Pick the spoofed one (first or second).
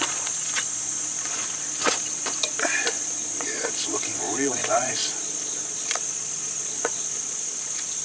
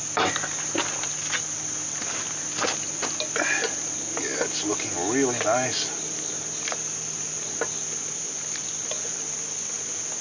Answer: first